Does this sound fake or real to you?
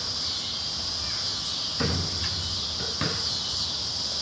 real